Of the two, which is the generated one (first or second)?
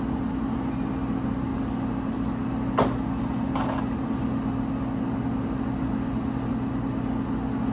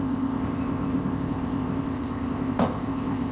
second